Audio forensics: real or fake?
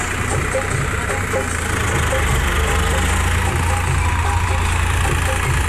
real